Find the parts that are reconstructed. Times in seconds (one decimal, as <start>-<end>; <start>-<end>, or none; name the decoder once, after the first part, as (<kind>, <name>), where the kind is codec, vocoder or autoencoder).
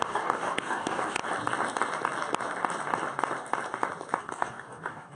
0.0-1.2 (codec, DAC); 4.2-5.1